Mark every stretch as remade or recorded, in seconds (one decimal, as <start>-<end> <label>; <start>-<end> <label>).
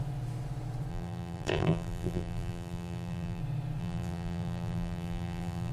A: 0.0-0.9 recorded; 0.9-3.4 remade; 3.4-3.8 recorded; 3.8-5.7 remade